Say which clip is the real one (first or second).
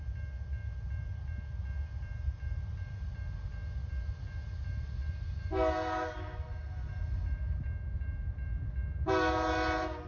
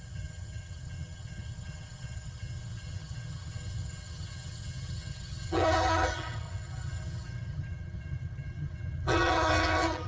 first